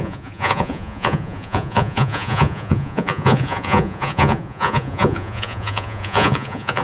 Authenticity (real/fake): fake